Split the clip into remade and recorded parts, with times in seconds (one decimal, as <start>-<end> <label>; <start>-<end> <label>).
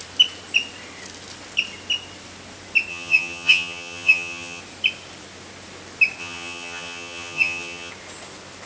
0.0-2.9 recorded; 2.9-4.6 remade; 4.6-6.2 recorded; 6.2-7.9 remade; 7.9-8.7 recorded